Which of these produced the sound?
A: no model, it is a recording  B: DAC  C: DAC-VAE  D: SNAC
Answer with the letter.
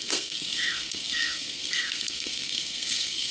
D